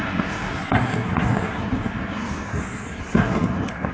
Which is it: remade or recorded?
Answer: remade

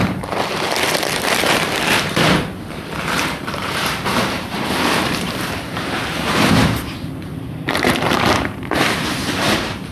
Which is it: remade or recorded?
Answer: remade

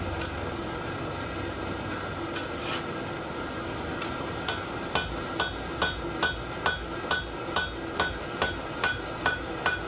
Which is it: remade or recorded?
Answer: recorded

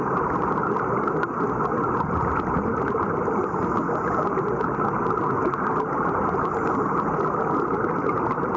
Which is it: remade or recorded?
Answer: recorded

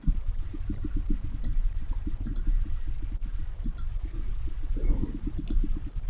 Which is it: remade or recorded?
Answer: remade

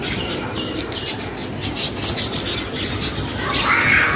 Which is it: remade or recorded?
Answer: recorded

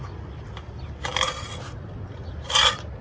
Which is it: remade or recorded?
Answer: recorded